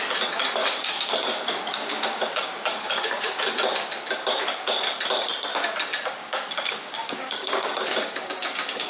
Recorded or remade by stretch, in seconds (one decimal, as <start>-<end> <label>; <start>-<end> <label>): 0.0-0.6 recorded; 0.6-3.5 remade; 3.5-6.2 recorded; 6.2-8.9 remade